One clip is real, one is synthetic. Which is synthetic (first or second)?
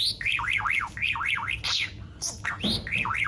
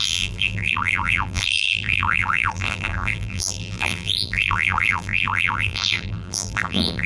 second